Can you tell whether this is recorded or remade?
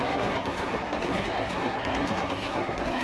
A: remade